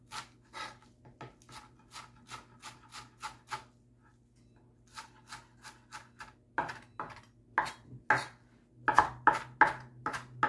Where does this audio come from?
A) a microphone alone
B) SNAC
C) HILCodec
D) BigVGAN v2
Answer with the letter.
A